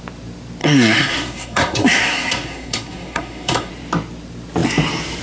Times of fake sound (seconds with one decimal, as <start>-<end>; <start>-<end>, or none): 0.6-3.7